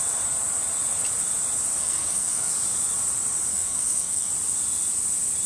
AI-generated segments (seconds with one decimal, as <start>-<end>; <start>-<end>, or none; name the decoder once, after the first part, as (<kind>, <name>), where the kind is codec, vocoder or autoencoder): 1.8-2.5 (codec, SNAC); 3.5-4.3